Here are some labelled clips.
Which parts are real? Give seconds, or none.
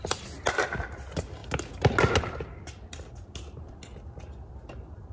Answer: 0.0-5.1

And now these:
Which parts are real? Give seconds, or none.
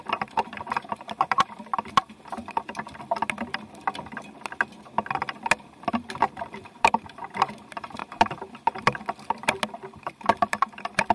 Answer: 1.7-5.9; 8.0-10.0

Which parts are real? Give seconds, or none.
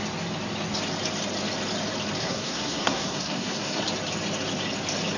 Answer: 0.0-2.2; 3.8-5.2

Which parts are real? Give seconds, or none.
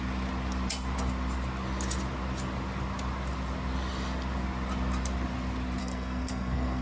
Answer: 0.0-5.8